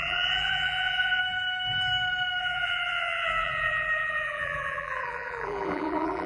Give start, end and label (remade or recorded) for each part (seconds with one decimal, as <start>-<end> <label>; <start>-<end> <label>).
0.0-1.2 remade; 1.2-2.4 recorded; 2.4-6.3 remade